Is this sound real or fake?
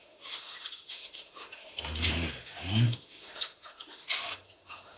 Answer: fake